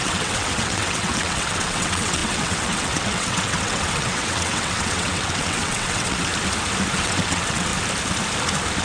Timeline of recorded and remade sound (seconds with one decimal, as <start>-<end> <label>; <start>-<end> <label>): 0.0-6.3 remade; 6.3-7.0 recorded; 7.0-7.7 remade; 7.7-8.8 recorded